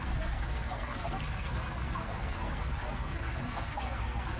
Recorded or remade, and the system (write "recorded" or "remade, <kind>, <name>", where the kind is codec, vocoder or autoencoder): remade, codec, SNAC